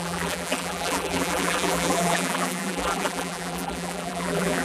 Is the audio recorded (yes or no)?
no